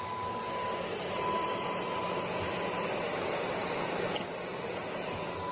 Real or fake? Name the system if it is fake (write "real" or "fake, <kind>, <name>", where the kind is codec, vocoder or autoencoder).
real